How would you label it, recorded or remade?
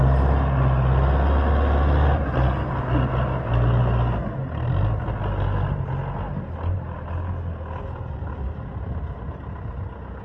recorded